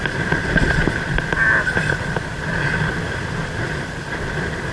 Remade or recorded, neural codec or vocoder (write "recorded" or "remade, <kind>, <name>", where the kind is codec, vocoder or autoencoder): remade, vocoder, BigVGAN v2